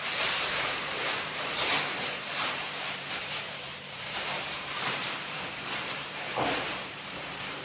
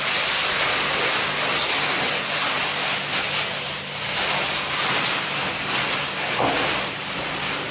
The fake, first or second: first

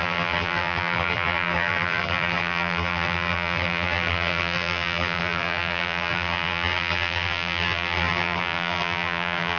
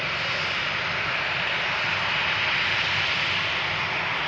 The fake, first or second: first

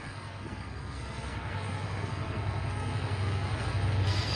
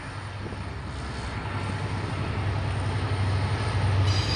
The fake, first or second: first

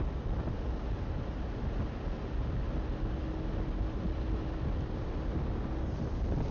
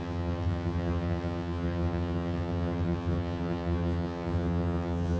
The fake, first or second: second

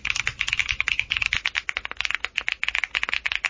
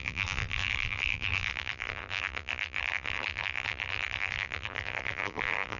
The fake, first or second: second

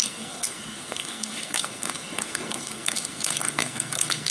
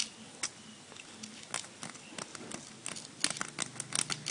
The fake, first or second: first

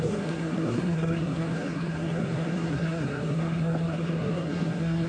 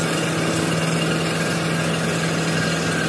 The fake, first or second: first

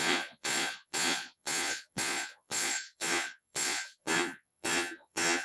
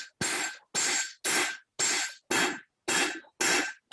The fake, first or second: first